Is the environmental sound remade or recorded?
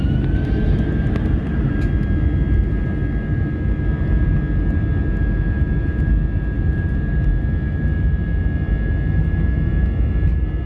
recorded